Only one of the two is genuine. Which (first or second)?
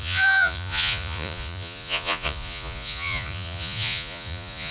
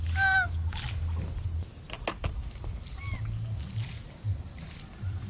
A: second